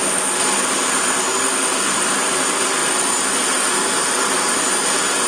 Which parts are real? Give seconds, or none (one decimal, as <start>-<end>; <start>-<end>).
0.5-5.3